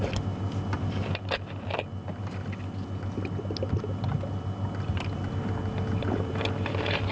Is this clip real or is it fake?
real